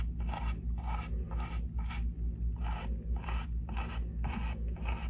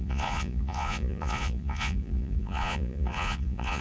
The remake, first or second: second